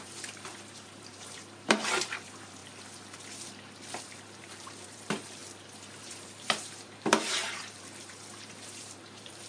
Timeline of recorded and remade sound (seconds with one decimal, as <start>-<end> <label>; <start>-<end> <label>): 0.0-2.6 remade; 2.6-4.0 recorded; 4.0-5.4 remade; 5.4-6.0 recorded; 6.0-9.5 remade